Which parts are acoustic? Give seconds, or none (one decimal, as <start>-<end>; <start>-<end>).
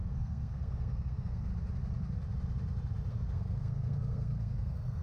1.5-3.1